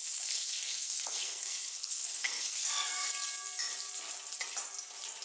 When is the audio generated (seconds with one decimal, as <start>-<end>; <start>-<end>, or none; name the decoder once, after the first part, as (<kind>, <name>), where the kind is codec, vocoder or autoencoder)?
0.0-3.1 (codec, SNAC)